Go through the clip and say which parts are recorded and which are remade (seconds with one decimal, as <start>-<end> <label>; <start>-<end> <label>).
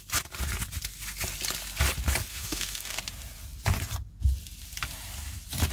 0.0-2.3 recorded; 2.3-3.0 remade; 3.0-5.7 recorded